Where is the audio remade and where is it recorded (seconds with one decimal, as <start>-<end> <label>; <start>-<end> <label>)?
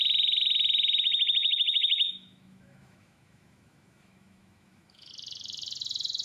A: 0.0-1.4 recorded; 1.4-5.1 remade; 5.1-6.2 recorded